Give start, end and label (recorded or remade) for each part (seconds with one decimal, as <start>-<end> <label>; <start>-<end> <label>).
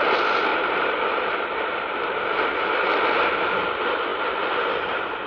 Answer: 0.0-0.5 recorded; 0.5-2.2 remade; 2.2-4.1 recorded; 4.1-4.7 remade; 4.7-5.3 recorded